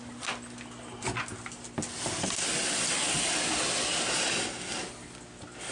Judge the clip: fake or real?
real